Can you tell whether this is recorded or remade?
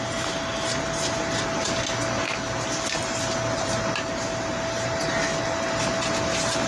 recorded